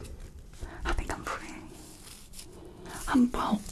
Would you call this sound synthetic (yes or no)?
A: no